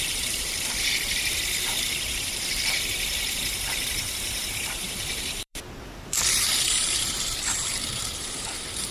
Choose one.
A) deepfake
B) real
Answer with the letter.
A